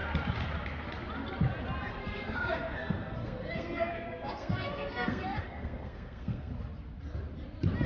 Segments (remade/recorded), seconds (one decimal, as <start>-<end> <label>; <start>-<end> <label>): 0.0-1.9 recorded; 1.9-6.5 remade; 6.5-7.9 recorded

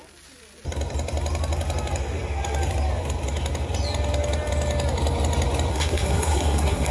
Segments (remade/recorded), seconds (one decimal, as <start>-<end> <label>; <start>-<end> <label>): 0.0-5.7 recorded; 5.7-6.9 remade

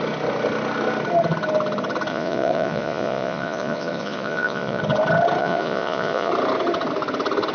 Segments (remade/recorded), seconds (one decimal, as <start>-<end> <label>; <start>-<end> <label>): 0.0-2.1 recorded; 2.1-4.8 remade; 4.8-5.4 recorded; 5.4-6.3 remade; 6.3-7.5 recorded

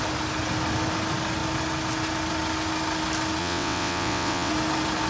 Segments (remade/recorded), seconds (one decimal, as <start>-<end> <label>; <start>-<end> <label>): 0.0-3.4 recorded; 3.4-4.5 remade; 4.5-5.1 recorded

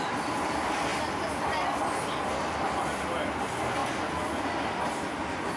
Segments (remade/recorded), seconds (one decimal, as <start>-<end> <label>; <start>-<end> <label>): 0.0-5.6 recorded

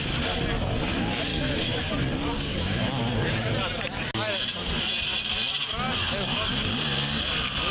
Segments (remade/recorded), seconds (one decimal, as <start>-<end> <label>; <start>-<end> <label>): 0.0-1.3 recorded; 1.3-1.8 remade; 1.8-2.5 recorded; 2.5-3.0 remade; 3.0-7.7 recorded

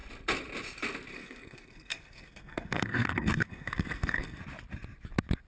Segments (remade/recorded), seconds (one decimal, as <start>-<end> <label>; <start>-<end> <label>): 0.0-1.1 recorded; 1.1-4.4 remade; 4.4-5.5 recorded